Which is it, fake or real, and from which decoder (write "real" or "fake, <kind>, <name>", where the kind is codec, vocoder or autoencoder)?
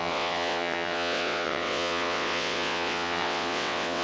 fake, vocoder, WaveNeXt